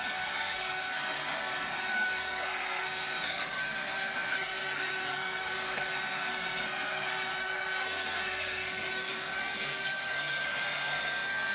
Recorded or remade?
remade